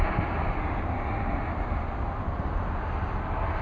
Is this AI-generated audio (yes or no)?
no